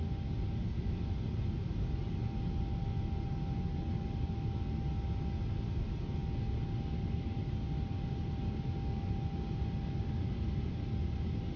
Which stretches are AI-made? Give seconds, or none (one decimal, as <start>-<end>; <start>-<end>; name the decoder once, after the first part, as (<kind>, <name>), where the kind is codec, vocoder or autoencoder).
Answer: none

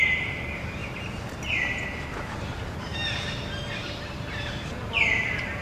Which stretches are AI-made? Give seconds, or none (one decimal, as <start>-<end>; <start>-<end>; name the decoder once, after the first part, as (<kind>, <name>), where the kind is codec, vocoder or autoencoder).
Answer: 0.0-0.8 (vocoder, BigVGAN v2); 2.3-2.9; 3.7-5.6

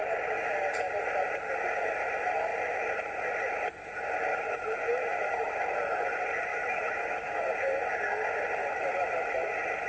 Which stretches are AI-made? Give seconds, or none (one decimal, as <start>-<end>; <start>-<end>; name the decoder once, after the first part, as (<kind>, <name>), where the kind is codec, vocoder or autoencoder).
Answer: 4.3-5.5 (autoencoder, DAC-VAE); 6.5-7.4; 8.6-9.5

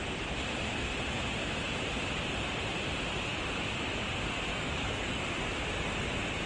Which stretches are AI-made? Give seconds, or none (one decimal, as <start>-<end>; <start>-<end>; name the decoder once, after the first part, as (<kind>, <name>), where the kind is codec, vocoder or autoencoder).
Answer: 4.5-5.1 (codec, DAC)

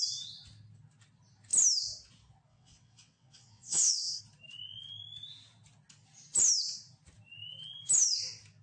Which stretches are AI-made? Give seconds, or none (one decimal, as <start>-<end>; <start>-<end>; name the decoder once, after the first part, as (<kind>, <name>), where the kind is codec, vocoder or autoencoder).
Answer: 2.5-4.2 (vocoder, WaveNeXt)

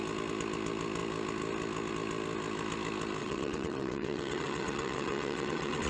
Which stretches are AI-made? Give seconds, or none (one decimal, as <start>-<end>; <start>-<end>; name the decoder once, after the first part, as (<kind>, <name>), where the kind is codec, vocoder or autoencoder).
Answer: 3.2-5.9 (vocoder, WaveNeXt)

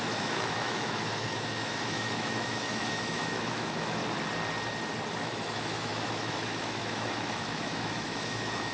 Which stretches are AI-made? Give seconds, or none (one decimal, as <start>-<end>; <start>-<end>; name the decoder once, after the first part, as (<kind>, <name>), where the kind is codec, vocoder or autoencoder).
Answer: 0.0-4.0 (autoencoder, DAC-VAE); 5.2-8.7

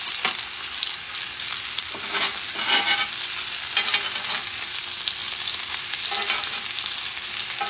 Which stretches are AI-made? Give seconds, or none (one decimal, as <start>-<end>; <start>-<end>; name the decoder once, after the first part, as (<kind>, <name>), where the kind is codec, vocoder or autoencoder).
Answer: none